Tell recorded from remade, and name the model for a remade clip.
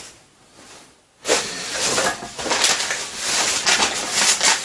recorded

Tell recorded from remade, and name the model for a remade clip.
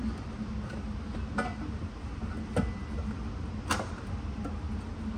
recorded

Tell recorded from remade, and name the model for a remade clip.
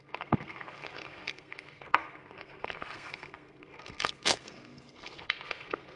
remade, codec, SNAC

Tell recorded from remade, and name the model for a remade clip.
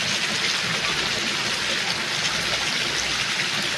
recorded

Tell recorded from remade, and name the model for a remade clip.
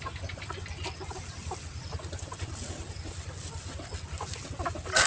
recorded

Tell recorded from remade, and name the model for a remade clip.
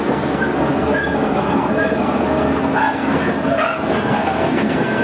remade, codec, SNAC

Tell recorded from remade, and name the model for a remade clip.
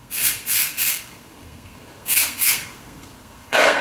remade, codec, SNAC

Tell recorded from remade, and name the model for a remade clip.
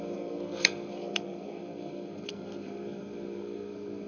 remade, codec, SNAC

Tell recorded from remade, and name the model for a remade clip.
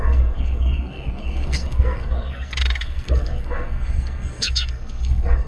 remade, codec, SNAC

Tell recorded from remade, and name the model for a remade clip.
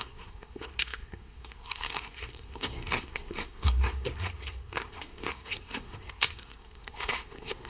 remade, codec, SNAC